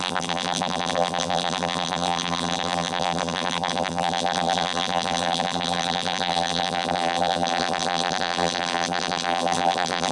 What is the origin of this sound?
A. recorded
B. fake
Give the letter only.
B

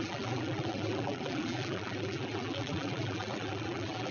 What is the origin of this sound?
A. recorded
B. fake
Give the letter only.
B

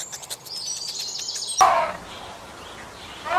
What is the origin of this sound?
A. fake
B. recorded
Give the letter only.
B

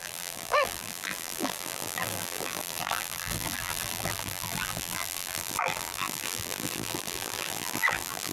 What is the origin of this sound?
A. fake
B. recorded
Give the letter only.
A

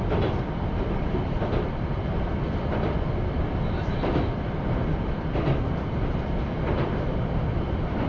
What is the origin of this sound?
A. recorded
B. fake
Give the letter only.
B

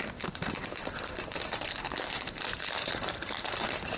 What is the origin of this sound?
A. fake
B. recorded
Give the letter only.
A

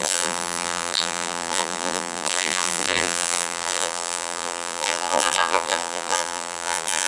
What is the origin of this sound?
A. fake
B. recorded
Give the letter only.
A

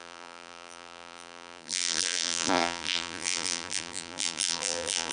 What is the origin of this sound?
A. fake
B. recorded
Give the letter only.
A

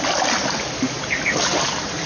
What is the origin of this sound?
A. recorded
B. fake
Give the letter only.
A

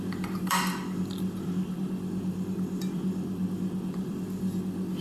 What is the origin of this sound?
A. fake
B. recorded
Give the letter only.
A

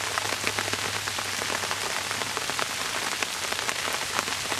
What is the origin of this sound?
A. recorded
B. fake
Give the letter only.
A